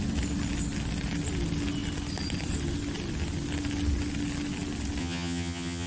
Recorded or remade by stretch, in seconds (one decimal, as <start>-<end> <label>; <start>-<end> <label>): 0.0-5.0 recorded; 5.0-5.9 remade